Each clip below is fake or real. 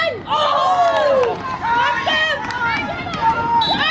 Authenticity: real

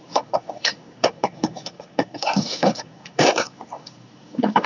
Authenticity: fake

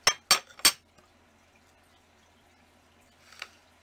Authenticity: real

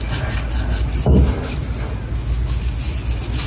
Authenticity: real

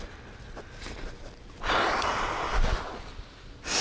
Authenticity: real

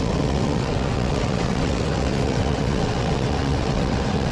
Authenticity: fake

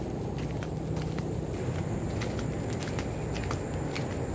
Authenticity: real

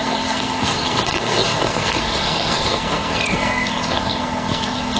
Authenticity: fake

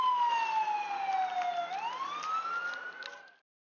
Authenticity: real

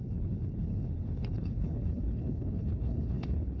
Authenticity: fake